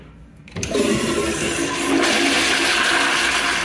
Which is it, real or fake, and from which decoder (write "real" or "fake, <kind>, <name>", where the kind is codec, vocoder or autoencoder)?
real